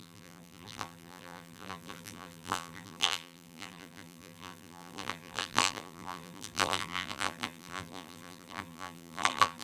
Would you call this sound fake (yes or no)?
yes